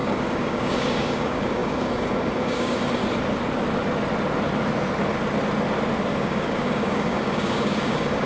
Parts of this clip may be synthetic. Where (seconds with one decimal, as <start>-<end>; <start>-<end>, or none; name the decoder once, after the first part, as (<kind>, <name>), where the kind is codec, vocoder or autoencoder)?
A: 0.0-3.0 (codec, DAC); 6.1-8.3